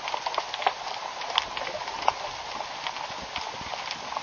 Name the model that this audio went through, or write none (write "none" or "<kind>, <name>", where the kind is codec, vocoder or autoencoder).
none